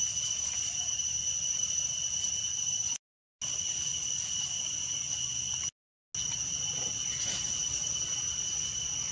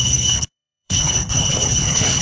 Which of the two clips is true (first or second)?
first